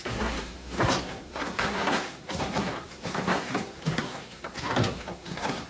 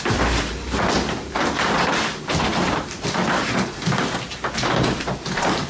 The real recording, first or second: second